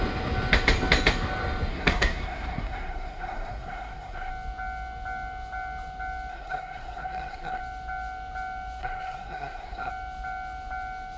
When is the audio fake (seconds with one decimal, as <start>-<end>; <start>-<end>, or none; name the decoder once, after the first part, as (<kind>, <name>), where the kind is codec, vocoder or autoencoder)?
1.7-4.3 (codec, SNAC); 6.3-7.6; 8.8-9.9